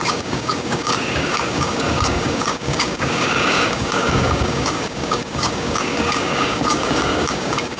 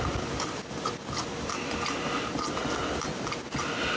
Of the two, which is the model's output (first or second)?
first